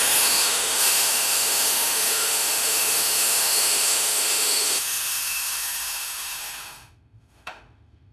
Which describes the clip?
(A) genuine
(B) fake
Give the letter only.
B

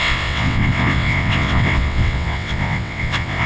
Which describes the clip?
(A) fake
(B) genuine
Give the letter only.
A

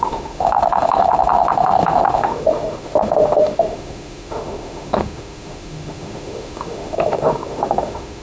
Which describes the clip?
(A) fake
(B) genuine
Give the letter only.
A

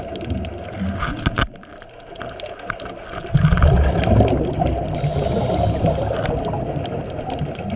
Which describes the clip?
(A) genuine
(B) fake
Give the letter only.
A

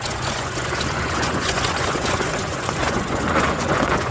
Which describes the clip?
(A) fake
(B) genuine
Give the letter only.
A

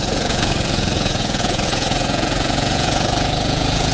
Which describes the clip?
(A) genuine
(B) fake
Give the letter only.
B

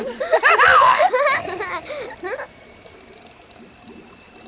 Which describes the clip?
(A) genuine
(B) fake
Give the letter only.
A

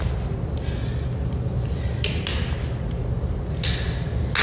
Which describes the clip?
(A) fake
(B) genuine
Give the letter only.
B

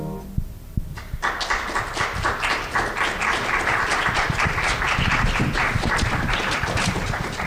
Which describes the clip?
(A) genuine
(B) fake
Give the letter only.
A